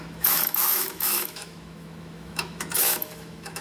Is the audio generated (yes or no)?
yes